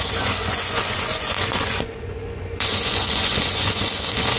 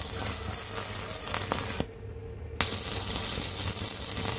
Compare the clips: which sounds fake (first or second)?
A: first